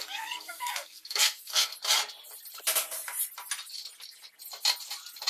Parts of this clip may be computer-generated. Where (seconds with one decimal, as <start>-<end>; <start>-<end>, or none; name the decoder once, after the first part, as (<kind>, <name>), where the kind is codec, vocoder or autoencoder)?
0.0-1.7 (codec, SNAC)